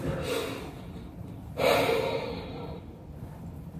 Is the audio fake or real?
real